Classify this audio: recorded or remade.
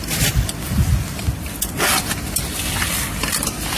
recorded